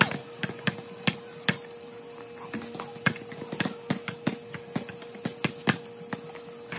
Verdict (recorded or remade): recorded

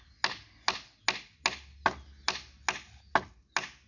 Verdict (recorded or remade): recorded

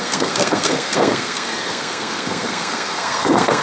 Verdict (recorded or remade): remade